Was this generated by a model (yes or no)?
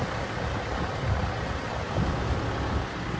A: no